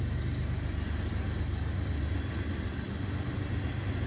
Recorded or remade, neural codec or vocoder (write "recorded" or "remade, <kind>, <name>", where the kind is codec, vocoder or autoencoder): recorded